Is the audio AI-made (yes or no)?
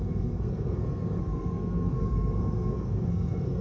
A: yes